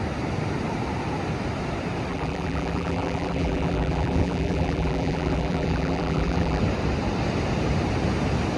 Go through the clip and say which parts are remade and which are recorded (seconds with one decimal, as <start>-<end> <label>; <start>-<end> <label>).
0.0-2.1 recorded; 2.1-6.6 remade; 6.6-8.6 recorded